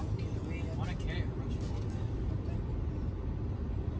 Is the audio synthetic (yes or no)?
no